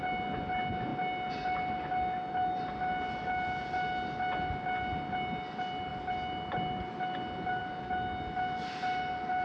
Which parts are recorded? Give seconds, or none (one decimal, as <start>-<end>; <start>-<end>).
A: 0.0-9.4